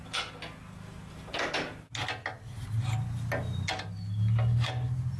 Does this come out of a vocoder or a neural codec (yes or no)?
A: no